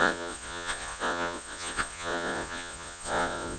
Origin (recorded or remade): remade